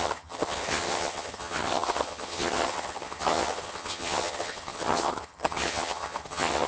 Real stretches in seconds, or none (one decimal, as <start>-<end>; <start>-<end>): none